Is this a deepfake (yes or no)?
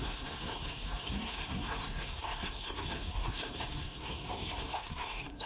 yes